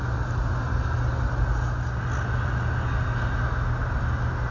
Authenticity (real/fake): real